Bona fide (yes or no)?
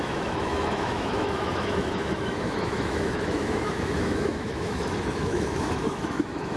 no